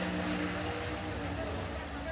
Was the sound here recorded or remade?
recorded